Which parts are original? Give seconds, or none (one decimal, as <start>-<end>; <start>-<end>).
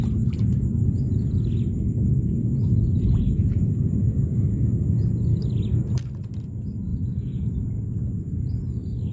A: 0.0-2.6; 5.1-6.9; 7.7-9.1